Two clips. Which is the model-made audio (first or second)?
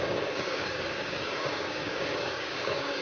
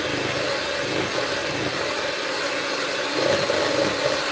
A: first